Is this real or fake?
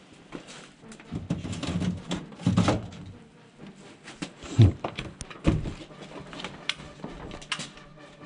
real